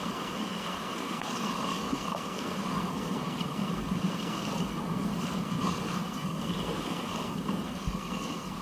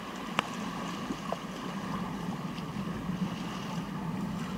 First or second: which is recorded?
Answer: second